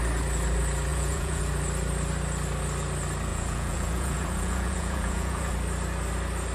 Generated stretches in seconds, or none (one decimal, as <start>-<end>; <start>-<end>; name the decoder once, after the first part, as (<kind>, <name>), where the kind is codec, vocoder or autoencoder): 0.9-1.4 (vocoder, Vocos); 3.3-5.5